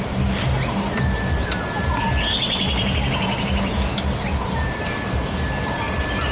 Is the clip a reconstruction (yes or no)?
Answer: no